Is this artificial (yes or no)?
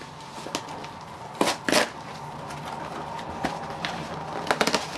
no